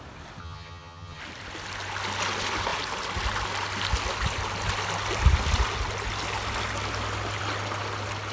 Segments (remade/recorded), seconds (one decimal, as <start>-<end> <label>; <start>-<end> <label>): 0.0-0.4 recorded; 0.4-1.2 remade; 1.2-8.3 recorded

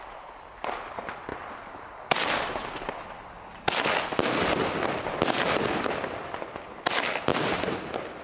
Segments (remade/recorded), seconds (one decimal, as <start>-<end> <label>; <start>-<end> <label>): 0.0-8.2 recorded

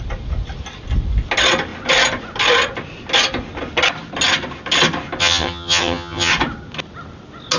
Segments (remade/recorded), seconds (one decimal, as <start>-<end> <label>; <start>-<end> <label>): 0.0-5.2 recorded; 5.2-6.3 remade; 6.3-7.6 recorded

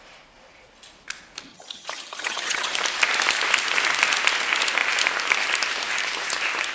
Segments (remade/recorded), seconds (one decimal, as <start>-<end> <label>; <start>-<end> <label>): 0.0-1.5 recorded; 1.5-2.7 remade; 2.7-6.7 recorded